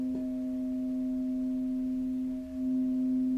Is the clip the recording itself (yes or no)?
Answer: yes